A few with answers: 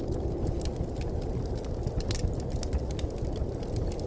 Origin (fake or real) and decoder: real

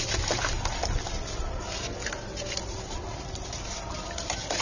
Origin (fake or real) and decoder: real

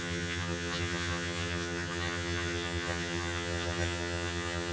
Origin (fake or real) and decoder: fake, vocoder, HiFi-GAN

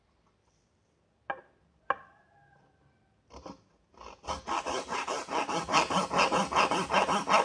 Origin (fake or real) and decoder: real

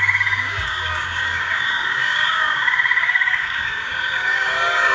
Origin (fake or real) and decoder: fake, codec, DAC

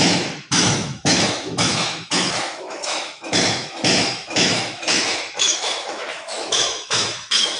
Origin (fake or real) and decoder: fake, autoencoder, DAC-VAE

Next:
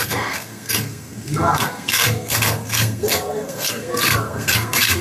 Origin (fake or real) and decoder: fake, codec, SNAC